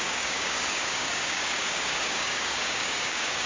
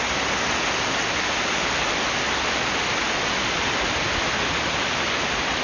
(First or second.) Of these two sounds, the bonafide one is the second